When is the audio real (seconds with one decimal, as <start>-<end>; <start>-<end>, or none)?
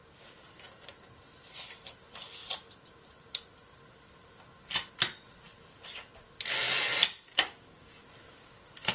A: 0.0-7.3; 8.0-8.9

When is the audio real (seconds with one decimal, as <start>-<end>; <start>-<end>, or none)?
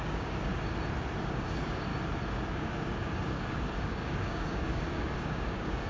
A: 0.5-1.2; 1.9-2.5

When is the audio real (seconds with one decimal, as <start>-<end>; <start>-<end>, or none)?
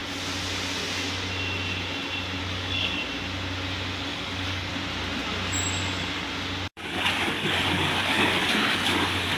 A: 0.0-2.4; 3.0-4.1; 4.7-6.7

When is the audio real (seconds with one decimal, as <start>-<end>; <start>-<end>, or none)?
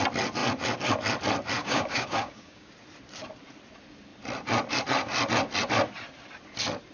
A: 0.0-1.6; 2.7-6.9